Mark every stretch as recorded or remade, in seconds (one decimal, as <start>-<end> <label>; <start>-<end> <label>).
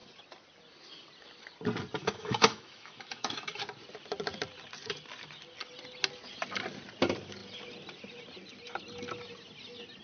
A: 0.0-2.0 recorded; 2.0-3.6 remade; 3.6-10.0 recorded